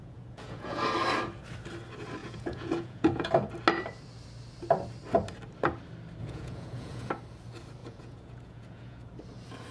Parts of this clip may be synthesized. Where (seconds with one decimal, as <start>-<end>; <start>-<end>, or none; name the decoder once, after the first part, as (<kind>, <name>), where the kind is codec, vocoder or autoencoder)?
0.0-0.8 (vocoder, Vocos); 2.2-3.3; 6.2-7.1; 7.8-9.0